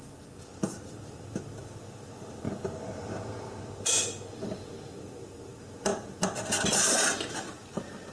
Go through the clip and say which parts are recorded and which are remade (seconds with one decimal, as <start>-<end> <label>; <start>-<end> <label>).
0.0-8.1 recorded